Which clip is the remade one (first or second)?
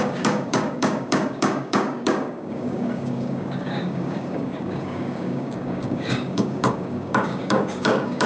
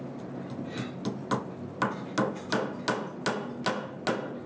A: first